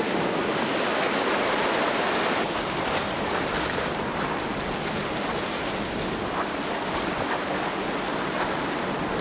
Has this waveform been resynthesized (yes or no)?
no